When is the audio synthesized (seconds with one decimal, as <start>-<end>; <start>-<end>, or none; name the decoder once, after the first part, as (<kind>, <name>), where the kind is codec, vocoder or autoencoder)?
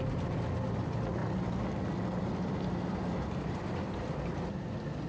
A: none